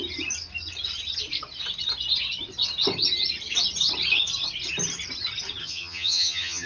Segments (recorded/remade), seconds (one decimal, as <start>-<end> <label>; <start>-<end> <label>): 0.0-5.6 recorded; 5.6-6.7 remade